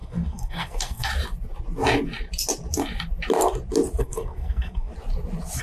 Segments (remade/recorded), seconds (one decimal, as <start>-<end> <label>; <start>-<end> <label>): 0.0-1.1 remade; 1.1-4.0 recorded; 4.0-4.9 remade; 4.9-5.6 recorded